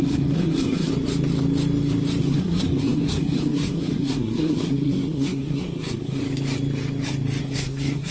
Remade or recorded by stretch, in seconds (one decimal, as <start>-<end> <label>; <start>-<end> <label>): 0.0-0.9 remade; 0.9-2.2 recorded; 2.2-6.2 remade; 6.2-7.4 recorded; 7.4-8.1 remade